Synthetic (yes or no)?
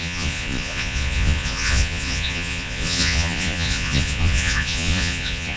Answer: yes